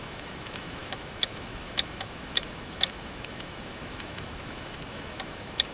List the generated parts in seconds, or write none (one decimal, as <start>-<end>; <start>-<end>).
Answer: 0.0-5.7